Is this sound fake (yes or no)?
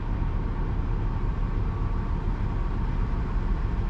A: no